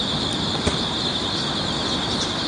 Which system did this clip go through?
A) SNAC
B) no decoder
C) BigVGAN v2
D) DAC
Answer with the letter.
B